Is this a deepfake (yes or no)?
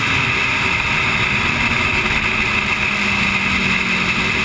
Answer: no